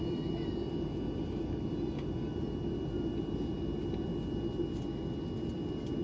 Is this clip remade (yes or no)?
no